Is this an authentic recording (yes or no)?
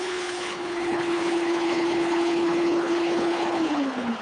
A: no